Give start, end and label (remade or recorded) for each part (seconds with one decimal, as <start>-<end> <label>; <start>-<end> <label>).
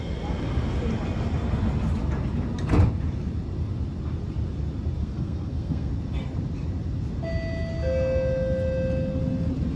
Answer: 0.0-5.0 recorded; 5.0-5.9 remade; 5.9-9.8 recorded